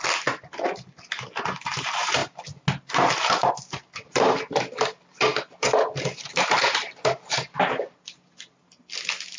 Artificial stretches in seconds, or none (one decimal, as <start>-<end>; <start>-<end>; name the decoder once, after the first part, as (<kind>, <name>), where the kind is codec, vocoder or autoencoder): none